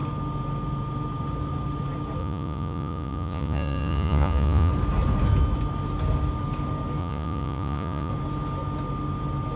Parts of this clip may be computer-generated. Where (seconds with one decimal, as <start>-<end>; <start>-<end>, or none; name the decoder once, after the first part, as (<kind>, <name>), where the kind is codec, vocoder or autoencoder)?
2.2-4.7 (vocoder, Vocos); 7.0-8.1